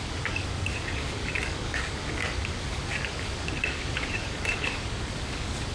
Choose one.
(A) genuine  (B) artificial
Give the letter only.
B